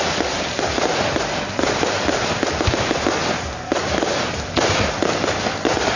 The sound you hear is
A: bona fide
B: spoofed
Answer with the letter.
A